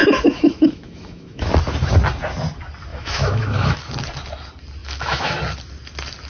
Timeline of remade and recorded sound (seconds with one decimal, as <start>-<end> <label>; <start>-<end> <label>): 0.0-1.5 remade; 1.5-2.9 recorded; 2.9-3.8 remade; 3.8-4.8 recorded; 4.8-5.4 remade; 5.4-6.3 recorded